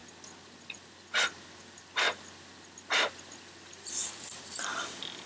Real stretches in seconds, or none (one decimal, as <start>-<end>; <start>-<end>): 0.0-4.0; 4.5-5.3